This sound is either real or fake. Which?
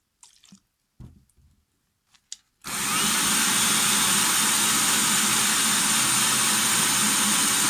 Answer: real